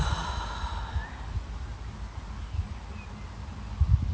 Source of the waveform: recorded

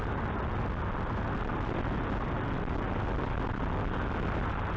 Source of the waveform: recorded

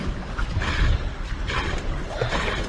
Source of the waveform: recorded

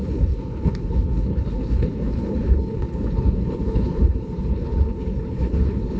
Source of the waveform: remade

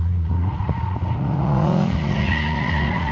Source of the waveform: remade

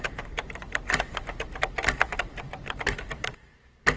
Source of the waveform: remade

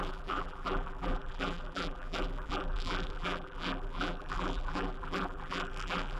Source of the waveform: remade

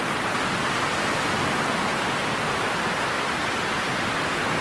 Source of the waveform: recorded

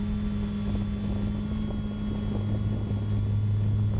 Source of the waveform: recorded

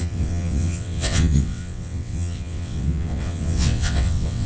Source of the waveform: remade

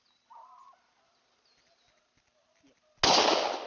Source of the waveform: recorded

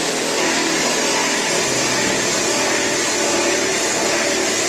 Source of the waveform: recorded